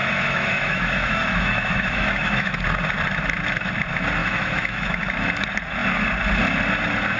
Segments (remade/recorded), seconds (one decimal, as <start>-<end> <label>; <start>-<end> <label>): 0.0-2.6 remade; 2.6-4.2 recorded; 4.2-5.1 remade; 5.1-7.2 recorded